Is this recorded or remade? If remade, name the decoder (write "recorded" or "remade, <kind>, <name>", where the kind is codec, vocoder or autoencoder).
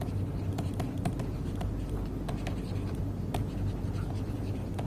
recorded